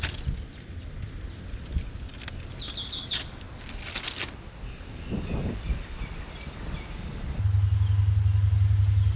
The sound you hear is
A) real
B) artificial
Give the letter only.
A